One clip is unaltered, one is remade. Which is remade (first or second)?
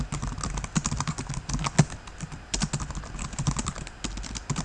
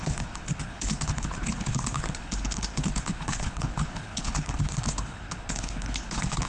second